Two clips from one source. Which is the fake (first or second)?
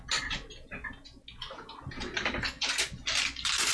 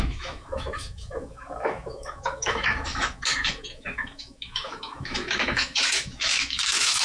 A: second